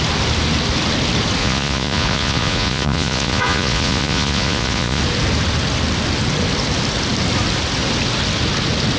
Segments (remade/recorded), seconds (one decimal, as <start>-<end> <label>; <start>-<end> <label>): 0.0-1.4 recorded; 1.4-5.0 remade; 5.0-9.0 recorded

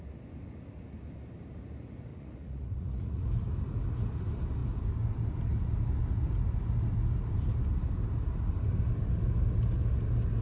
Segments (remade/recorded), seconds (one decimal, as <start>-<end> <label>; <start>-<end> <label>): 0.0-2.1 recorded; 2.1-3.3 remade; 3.3-10.4 recorded